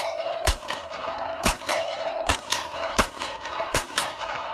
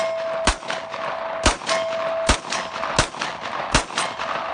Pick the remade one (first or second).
first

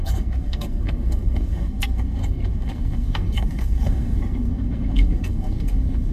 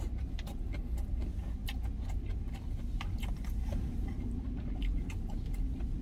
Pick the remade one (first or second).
first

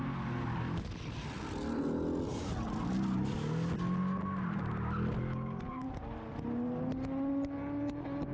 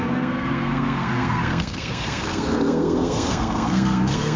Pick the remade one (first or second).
second